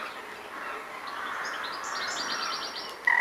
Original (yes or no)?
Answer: yes